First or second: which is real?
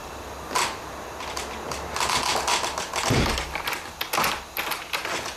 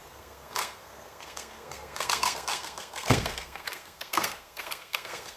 first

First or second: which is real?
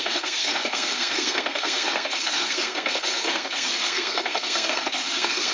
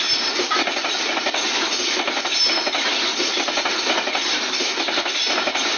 second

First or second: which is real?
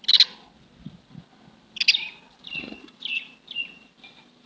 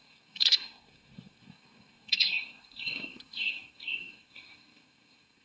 first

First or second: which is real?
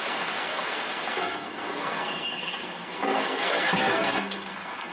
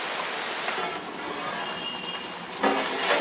second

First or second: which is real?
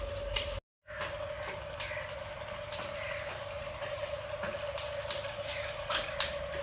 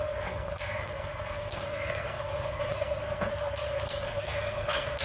first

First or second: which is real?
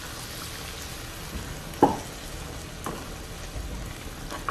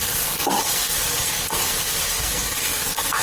first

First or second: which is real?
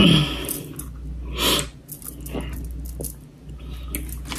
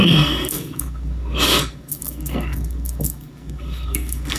first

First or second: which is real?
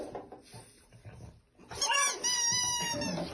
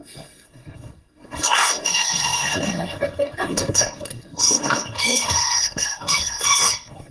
first